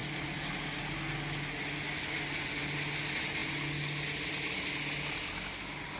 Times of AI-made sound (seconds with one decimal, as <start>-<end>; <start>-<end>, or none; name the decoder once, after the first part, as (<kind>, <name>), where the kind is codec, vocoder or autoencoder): none